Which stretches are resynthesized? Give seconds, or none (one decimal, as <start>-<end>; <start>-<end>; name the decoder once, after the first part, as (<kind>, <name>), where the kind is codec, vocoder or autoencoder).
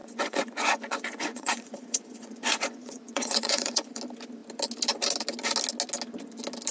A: 0.0-4.0 (vocoder, Vocos)